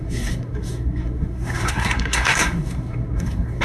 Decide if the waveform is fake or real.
fake